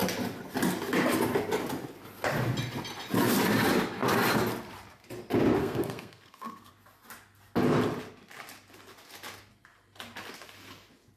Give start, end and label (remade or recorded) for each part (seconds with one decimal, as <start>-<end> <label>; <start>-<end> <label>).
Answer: 0.0-5.6 recorded; 5.6-6.7 remade; 6.7-11.2 recorded